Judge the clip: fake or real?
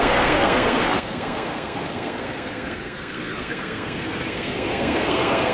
fake